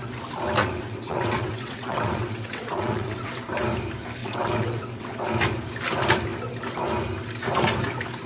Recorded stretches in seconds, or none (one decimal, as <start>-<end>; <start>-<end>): 0.0-0.6; 3.3-4.2; 5.3-8.3